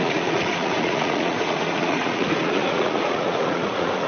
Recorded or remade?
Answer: remade